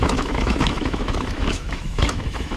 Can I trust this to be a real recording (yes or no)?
no